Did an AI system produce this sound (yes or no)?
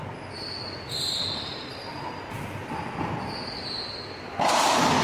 no